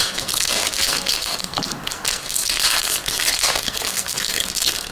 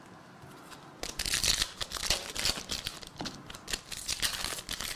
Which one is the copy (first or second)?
first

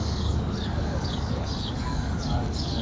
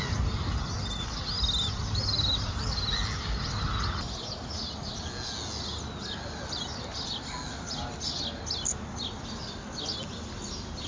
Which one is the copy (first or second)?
first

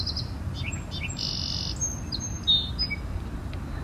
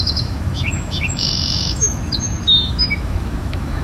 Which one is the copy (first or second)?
second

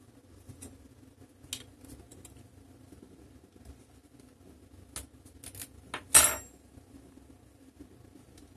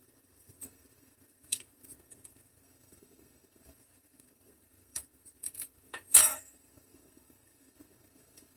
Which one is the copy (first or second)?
second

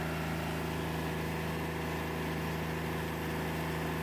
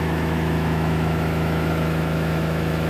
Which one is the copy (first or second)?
second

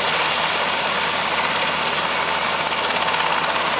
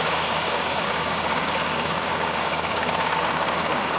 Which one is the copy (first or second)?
second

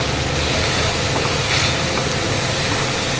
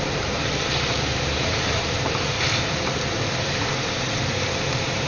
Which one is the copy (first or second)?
second